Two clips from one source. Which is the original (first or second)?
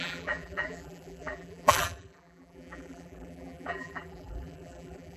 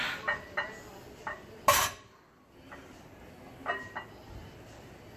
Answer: second